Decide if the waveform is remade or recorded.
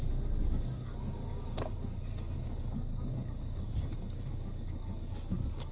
remade